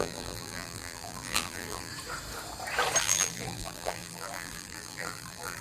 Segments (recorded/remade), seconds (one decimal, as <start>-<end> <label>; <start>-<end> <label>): 0.0-1.9 remade; 1.9-3.0 recorded; 3.0-5.6 remade